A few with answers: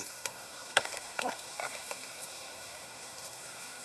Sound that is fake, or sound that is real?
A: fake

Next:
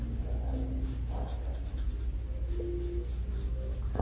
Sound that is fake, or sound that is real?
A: real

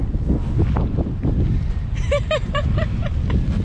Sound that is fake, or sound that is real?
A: real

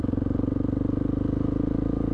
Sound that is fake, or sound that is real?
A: real